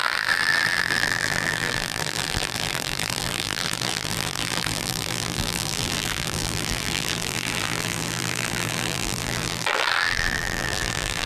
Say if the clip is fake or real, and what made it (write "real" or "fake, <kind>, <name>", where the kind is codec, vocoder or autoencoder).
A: fake, vocoder, BigVGAN v2